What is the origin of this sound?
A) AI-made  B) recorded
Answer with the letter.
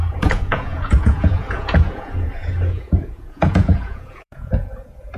A